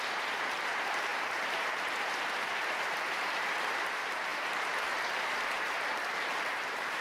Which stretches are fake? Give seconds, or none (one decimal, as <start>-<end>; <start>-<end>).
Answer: 0.0-7.0